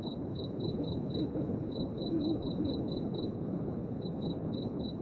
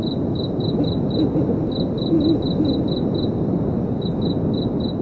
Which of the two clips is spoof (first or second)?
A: first